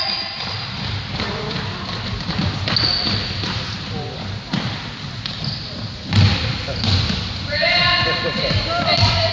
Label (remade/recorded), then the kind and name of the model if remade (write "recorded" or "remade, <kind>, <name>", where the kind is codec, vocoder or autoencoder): recorded